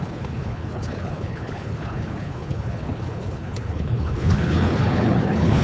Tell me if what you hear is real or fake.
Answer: fake